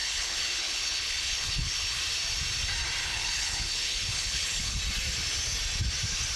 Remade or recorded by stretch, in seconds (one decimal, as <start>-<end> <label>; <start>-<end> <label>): 0.0-2.0 remade; 2.0-3.0 recorded; 3.0-4.8 remade; 4.8-6.4 recorded